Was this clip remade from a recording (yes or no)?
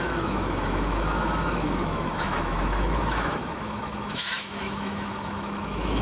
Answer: yes